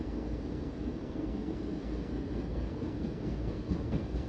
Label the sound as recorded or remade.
remade